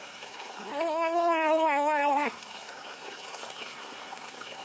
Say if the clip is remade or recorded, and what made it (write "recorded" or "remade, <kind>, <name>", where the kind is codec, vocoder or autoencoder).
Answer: remade, codec, SNAC